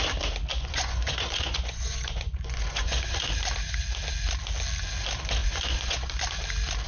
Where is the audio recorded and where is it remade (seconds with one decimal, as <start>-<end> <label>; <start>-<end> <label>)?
0.0-0.5 recorded; 0.5-3.3 remade; 3.3-5.4 recorded; 5.4-6.1 remade; 6.1-6.9 recorded